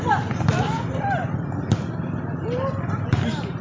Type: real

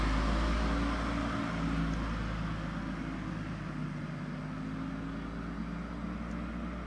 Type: real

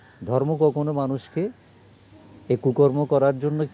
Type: real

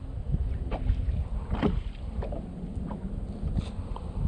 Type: real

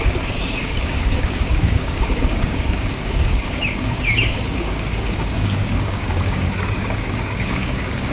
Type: fake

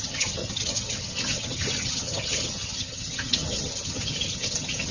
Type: fake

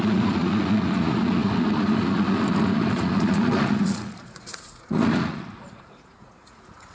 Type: fake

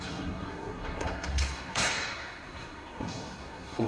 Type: fake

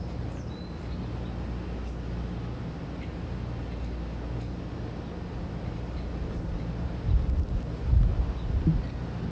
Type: real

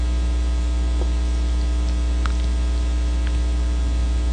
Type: real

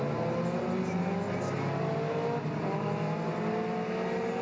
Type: real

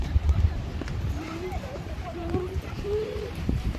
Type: fake